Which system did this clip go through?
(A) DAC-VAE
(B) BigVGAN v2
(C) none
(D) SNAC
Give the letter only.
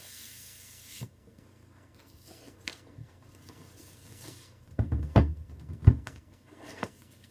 D